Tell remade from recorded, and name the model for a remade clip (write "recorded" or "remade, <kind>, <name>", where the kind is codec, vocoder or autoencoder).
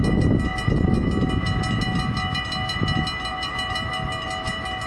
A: recorded